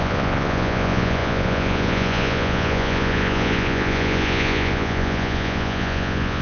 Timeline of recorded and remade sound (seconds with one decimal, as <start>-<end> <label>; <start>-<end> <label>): 0.0-6.4 remade